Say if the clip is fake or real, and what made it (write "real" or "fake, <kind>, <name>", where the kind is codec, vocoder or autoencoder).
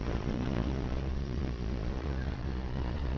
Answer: fake, vocoder, Vocos